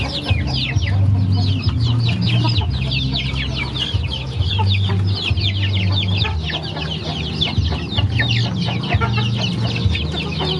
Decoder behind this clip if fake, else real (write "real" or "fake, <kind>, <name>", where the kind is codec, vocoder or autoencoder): real